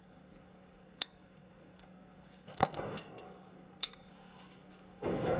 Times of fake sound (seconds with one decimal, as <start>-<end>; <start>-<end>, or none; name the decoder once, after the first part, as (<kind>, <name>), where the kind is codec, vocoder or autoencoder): 0.0-5.4 (codec, SNAC)